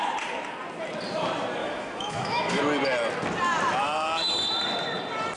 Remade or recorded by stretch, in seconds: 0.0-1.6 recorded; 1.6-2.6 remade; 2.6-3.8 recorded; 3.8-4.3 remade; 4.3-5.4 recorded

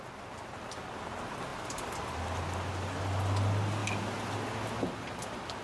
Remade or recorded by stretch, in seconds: 0.0-5.6 recorded

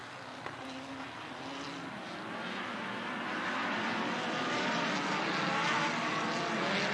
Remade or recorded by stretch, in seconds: 0.0-6.9 recorded

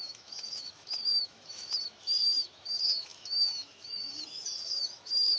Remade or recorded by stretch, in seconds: 0.0-5.4 remade

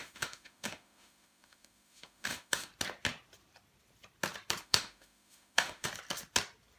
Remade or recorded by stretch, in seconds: 0.0-2.7 remade; 2.7-4.6 recorded; 4.6-5.9 remade; 5.9-6.8 recorded

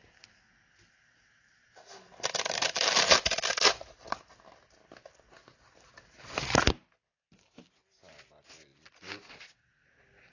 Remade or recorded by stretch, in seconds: 0.0-10.3 recorded

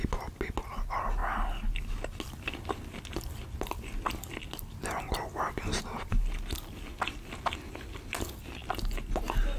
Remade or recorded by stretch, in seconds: 0.0-9.6 recorded